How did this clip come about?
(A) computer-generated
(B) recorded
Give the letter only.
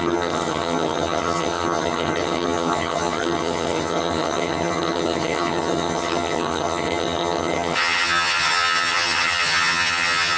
A